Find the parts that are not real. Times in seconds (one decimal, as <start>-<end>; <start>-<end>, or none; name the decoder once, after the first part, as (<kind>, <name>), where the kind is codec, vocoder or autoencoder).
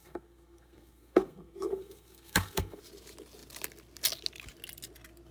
0.0-2.8 (codec, SNAC)